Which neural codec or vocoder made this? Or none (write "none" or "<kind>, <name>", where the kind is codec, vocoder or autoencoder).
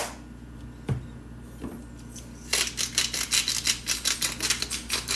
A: none